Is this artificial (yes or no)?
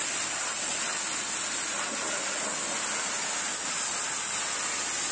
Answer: no